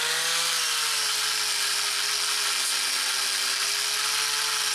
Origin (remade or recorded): recorded